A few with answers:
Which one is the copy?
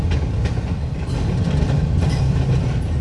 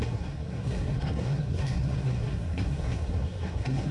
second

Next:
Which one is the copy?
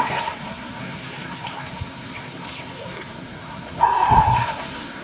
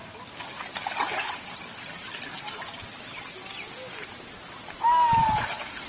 first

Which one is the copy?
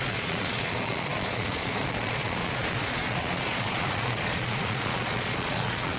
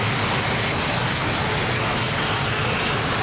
first